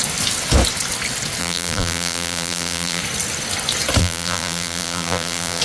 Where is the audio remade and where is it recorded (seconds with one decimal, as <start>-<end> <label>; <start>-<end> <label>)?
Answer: 0.0-1.4 recorded; 1.4-3.0 remade; 3.0-4.0 recorded; 4.0-5.6 remade